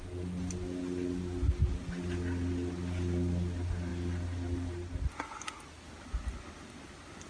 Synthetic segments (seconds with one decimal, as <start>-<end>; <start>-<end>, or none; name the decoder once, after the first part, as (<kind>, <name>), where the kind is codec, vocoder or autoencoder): none